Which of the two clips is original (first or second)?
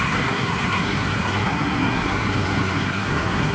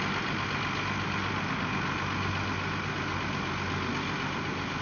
second